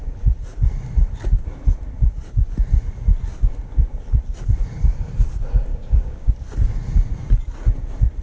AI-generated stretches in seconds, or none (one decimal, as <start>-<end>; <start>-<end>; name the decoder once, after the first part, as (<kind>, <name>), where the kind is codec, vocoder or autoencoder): 5.7-6.3 (codec, DAC)